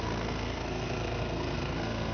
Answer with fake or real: fake